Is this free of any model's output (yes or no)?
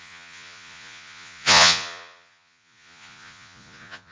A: no